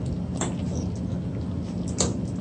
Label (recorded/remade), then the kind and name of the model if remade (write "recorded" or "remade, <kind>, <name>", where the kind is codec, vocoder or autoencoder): recorded